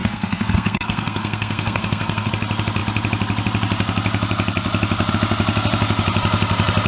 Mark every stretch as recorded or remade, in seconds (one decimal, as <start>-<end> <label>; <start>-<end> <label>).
0.0-2.3 remade; 2.3-6.9 recorded